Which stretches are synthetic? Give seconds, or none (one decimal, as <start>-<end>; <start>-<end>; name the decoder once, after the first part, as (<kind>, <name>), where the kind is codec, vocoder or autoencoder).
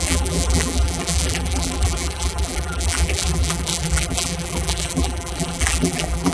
0.0-6.3 (vocoder, BigVGAN v2)